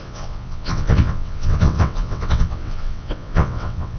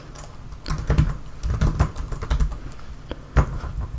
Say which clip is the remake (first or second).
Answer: first